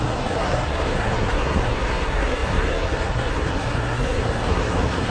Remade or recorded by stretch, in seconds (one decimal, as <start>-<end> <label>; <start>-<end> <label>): 0.0-5.1 remade